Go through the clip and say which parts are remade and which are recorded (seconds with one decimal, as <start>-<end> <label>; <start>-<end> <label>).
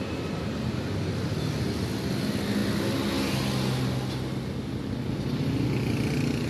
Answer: 0.0-6.5 recorded